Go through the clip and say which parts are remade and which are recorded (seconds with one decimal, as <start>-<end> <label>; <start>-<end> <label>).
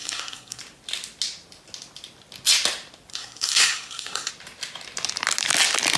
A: 0.0-0.6 remade; 0.6-3.1 recorded; 3.1-4.3 remade; 4.3-6.0 recorded